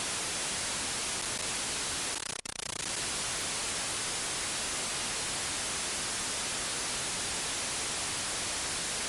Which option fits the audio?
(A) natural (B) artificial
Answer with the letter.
A